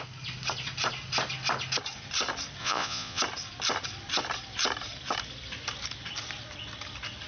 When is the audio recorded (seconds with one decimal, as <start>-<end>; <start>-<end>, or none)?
0.0-2.6; 3.2-7.3